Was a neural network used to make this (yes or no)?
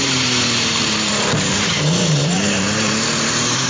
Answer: yes